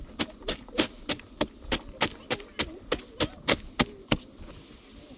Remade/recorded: recorded